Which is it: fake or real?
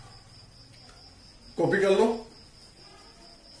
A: real